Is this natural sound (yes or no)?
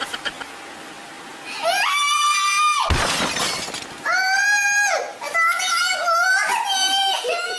yes